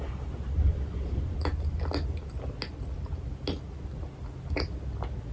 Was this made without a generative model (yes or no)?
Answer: yes